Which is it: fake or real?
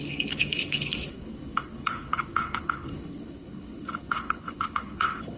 fake